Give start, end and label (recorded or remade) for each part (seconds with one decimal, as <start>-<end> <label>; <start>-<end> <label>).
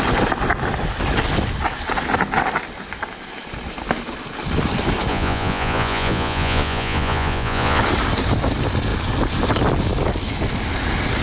0.0-5.1 recorded; 5.1-7.8 remade; 7.8-11.2 recorded